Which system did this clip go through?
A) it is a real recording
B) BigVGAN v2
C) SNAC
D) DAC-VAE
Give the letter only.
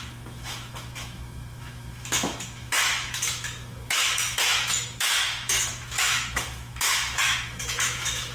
D